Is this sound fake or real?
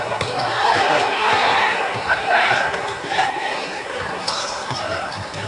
fake